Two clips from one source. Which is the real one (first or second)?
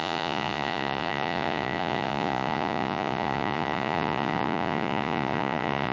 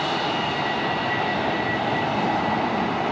second